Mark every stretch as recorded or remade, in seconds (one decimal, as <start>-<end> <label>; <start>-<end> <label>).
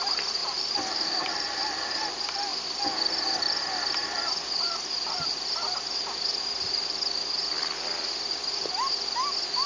0.0-0.4 recorded; 0.4-2.0 remade; 2.0-9.7 recorded